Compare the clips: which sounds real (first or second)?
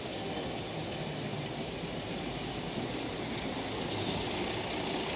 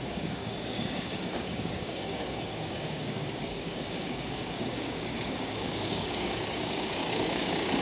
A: first